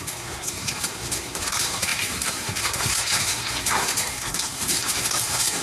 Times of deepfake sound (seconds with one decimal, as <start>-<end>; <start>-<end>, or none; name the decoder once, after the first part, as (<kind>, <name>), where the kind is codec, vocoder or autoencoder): 0.0-5.6 (codec, SNAC)